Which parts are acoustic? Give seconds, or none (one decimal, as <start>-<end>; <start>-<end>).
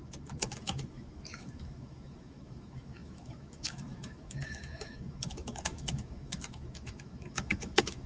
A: none